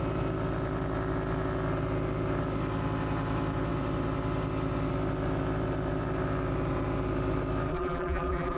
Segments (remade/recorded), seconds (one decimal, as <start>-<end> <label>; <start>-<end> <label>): 0.0-7.7 recorded; 7.7-8.6 remade